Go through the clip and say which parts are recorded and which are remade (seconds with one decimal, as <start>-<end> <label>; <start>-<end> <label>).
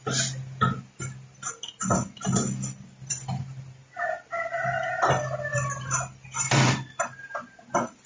0.0-3.1 recorded; 3.1-4.9 remade; 4.9-5.5 recorded; 5.5-7.5 remade; 7.5-8.1 recorded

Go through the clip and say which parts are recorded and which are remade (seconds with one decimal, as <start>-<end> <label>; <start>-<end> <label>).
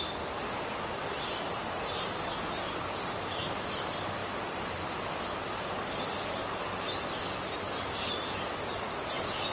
0.0-9.5 recorded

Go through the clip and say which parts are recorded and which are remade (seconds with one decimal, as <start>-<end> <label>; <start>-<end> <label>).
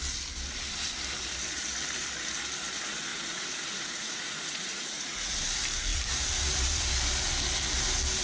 0.0-3.1 recorded; 3.1-5.3 remade; 5.3-8.2 recorded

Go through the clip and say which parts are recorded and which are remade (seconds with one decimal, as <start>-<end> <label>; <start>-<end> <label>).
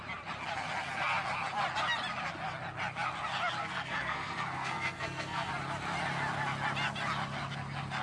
0.0-3.6 recorded; 3.6-5.5 remade; 5.5-8.0 recorded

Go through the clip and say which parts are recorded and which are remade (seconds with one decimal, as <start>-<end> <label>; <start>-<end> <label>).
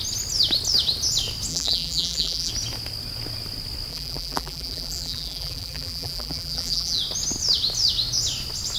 0.0-1.5 recorded; 1.5-2.5 remade; 2.5-3.9 recorded; 3.9-7.0 remade; 7.0-8.8 recorded